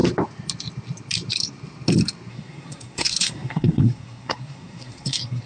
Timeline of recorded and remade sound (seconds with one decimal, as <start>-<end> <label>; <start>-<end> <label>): 0.0-2.3 recorded; 2.3-5.5 remade